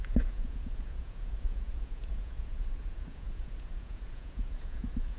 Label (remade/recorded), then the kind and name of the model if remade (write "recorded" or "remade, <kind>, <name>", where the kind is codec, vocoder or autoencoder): remade, vocoder, Vocos